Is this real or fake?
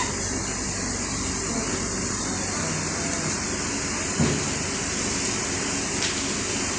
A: real